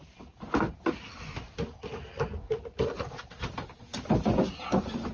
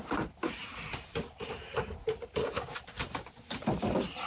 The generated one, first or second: second